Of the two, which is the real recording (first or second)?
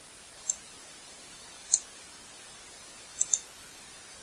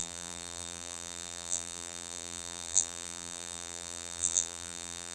first